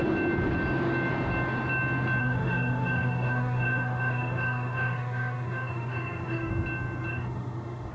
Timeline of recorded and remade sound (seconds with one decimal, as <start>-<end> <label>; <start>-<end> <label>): 0.0-2.2 recorded; 2.2-6.5 remade; 6.5-7.1 recorded; 7.1-7.9 remade